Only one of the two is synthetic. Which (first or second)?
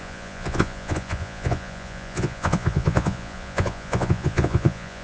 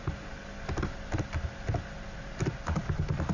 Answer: first